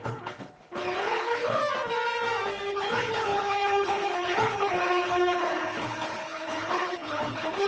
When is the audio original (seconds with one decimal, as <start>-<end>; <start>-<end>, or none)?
1.6-2.7